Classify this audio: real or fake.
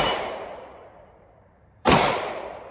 fake